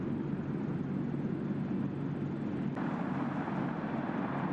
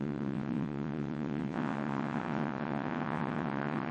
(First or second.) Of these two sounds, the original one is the first